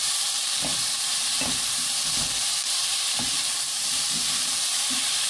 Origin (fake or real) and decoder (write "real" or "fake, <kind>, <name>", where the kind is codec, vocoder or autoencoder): fake, vocoder, BigVGAN v2